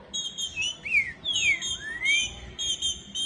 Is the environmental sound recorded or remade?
recorded